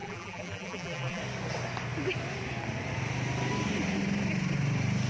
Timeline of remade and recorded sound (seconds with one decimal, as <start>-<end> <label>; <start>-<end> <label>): 0.0-1.2 remade; 1.2-5.1 recorded